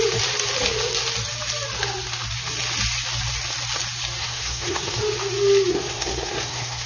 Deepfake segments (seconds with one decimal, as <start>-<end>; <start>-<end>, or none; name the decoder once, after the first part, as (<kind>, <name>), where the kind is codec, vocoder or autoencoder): 4.2-5.0 (codec, SNAC); 5.7-6.9